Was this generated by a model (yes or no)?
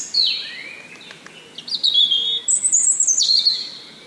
no